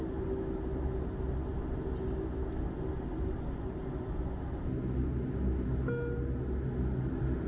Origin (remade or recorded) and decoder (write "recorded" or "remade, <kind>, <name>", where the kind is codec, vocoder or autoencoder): recorded